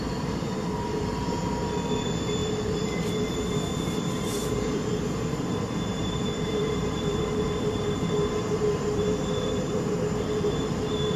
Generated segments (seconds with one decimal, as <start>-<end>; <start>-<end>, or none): 0.0-11.2